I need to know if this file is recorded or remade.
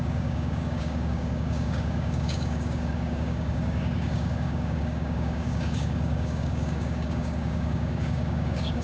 remade